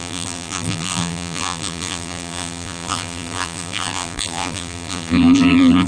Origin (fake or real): fake